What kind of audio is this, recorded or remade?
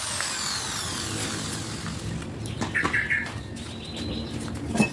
recorded